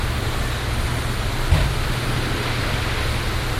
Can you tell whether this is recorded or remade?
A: recorded